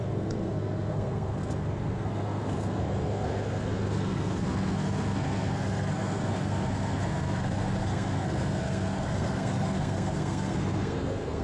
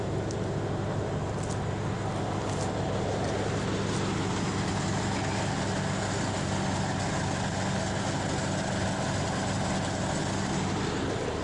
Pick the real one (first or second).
second